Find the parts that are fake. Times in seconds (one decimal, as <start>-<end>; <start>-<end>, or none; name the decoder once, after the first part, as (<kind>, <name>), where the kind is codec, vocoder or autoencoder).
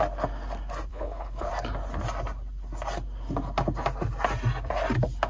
0.9-1.5 (codec, HILCodec)